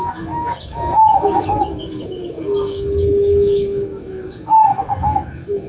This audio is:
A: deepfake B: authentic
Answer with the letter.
A